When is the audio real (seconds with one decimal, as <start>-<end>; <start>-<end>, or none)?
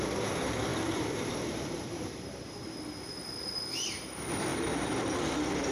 0.0-0.7; 2.5-4.5; 5.1-5.7